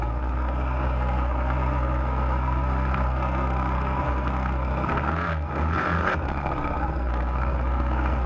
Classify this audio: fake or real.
fake